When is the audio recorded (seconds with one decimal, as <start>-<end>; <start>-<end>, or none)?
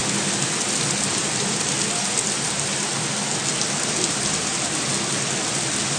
0.0-6.0